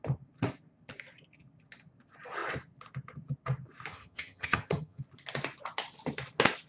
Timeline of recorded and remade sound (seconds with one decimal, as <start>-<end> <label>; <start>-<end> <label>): 0.0-3.9 recorded; 3.9-5.0 remade; 5.0-6.7 recorded

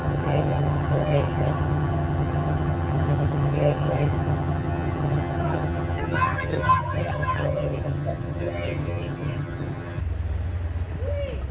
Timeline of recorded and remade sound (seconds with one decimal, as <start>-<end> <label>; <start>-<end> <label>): 0.0-10.0 remade; 10.0-11.5 recorded